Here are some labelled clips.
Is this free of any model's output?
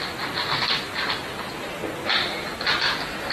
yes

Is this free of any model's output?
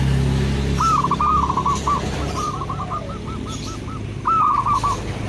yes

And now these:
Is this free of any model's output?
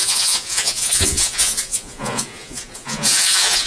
no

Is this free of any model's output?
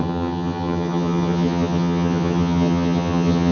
no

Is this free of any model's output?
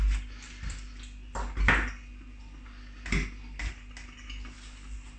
yes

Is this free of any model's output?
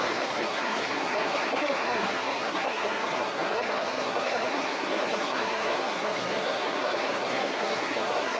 no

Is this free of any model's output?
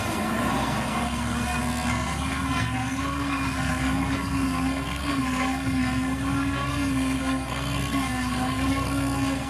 no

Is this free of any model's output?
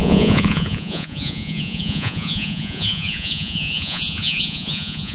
no